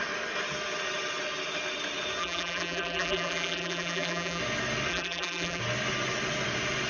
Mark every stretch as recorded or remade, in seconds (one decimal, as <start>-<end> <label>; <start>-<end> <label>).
0.0-2.2 recorded; 2.2-4.4 remade; 4.4-4.9 recorded; 4.9-5.6 remade; 5.6-6.9 recorded